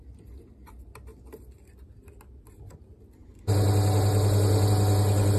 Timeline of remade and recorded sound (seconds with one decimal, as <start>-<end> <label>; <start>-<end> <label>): 0.0-5.4 recorded